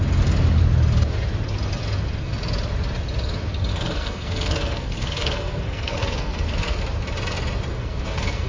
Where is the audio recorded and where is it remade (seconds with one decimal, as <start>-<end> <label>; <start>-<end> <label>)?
0.0-3.7 recorded; 3.7-6.8 remade; 6.8-7.7 recorded; 7.7-8.5 remade